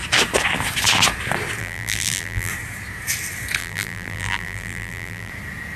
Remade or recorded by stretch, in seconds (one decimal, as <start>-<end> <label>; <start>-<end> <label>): 0.0-1.6 recorded; 1.6-2.5 remade; 2.5-3.6 recorded; 3.6-5.3 remade; 5.3-5.8 recorded